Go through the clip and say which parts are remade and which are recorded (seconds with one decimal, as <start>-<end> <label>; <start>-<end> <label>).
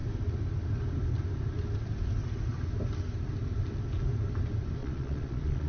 0.0-4.8 recorded; 4.8-5.7 remade